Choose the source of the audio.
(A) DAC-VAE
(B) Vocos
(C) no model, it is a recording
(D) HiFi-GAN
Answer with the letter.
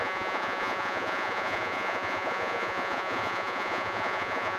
B